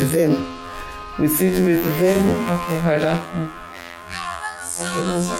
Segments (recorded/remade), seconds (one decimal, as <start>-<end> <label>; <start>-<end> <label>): 0.0-0.8 remade; 0.8-1.4 recorded; 1.4-5.4 remade